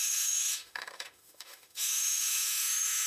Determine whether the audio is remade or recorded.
remade